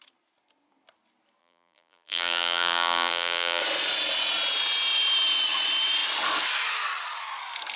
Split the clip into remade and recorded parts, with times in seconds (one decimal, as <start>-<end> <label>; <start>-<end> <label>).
0.0-1.4 recorded; 1.4-3.6 remade; 3.6-7.8 recorded